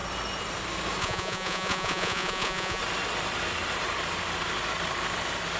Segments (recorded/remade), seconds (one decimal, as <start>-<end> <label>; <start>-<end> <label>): 0.0-1.0 recorded; 1.0-2.8 remade; 2.8-5.6 recorded